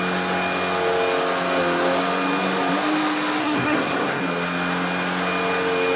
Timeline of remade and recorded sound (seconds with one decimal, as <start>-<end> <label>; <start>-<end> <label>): 0.0-3.4 recorded; 3.4-4.2 remade; 4.2-6.0 recorded